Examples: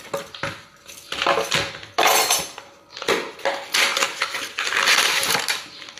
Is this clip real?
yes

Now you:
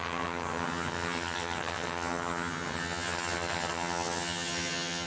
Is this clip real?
no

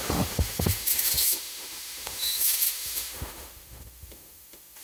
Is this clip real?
no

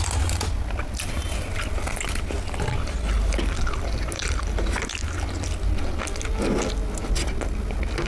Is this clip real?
yes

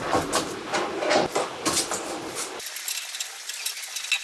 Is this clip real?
yes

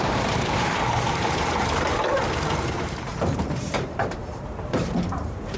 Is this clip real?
no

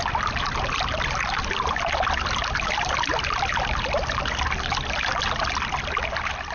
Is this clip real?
yes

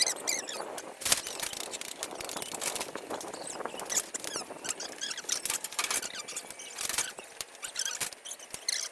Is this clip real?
yes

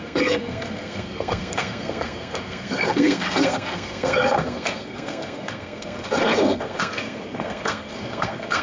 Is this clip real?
no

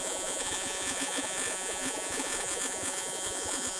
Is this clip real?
no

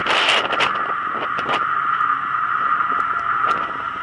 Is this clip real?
yes